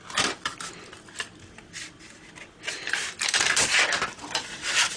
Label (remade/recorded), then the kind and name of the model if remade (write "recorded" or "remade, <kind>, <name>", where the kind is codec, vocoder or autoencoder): remade, vocoder, BigVGAN v2